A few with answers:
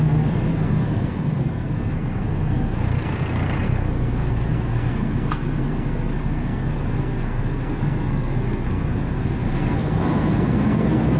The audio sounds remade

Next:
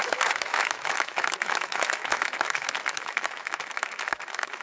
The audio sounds remade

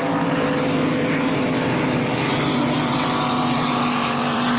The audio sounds remade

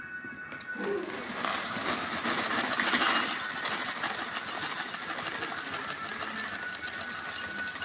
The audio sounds recorded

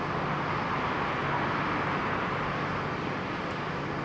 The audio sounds remade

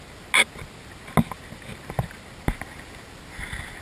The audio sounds recorded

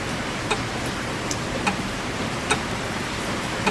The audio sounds recorded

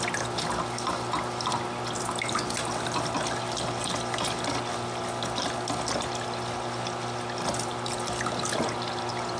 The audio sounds recorded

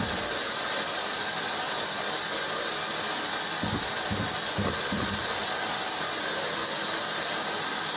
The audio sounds recorded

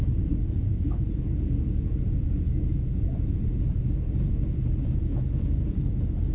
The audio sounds remade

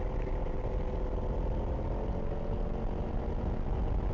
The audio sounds recorded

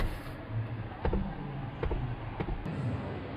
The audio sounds recorded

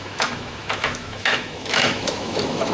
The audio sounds remade